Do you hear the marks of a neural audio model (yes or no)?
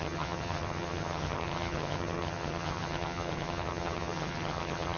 yes